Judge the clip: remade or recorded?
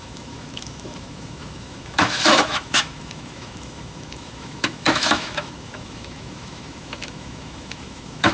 remade